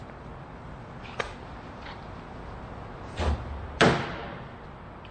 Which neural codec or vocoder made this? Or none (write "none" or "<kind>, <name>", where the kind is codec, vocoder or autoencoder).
none